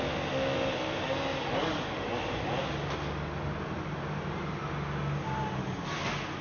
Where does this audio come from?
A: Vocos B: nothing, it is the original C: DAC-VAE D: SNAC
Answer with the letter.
B